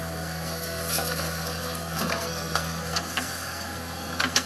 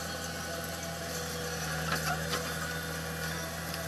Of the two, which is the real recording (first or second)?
second